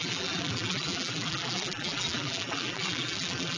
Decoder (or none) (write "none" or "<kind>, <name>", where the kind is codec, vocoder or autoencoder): vocoder, BigVGAN v2